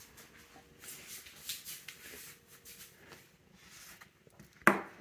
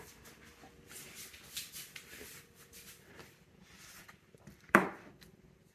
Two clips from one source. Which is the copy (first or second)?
second